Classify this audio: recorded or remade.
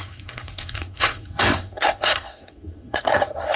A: remade